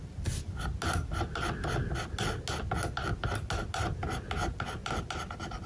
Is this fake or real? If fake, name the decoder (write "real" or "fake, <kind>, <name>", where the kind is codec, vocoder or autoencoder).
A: real